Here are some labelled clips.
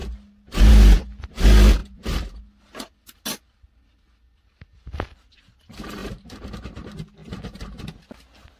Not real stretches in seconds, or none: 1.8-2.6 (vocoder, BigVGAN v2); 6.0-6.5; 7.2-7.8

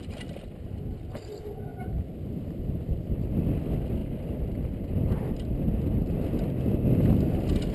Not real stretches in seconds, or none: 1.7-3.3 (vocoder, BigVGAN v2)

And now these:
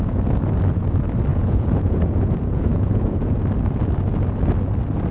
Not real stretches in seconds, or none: 1.3-3.4 (vocoder, Vocos)

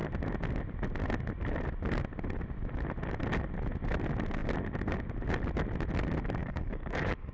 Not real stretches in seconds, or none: 6.4-7.3 (codec, DAC)

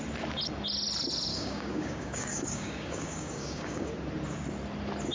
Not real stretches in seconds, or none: 1.3-3.9 (codec, DAC)

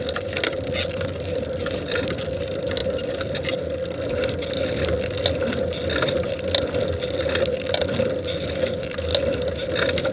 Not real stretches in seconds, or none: none

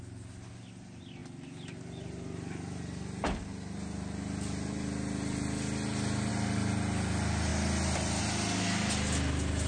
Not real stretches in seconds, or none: none

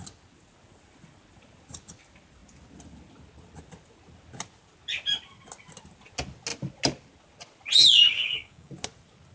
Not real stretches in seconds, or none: 8.1-8.7 (codec, DAC)